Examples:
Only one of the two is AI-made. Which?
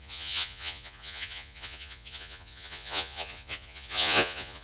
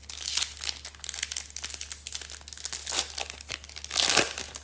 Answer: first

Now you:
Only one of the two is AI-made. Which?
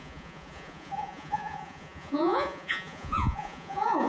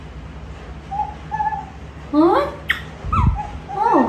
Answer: first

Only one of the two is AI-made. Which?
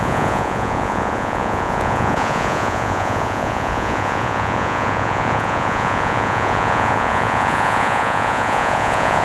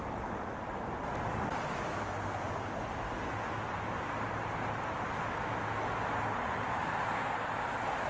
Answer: first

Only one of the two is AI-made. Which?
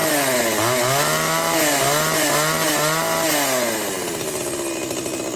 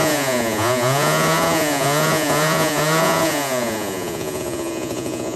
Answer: second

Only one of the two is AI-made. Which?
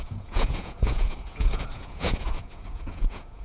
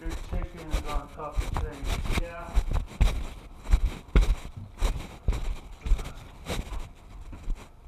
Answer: first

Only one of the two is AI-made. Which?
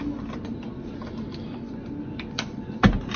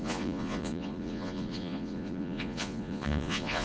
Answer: second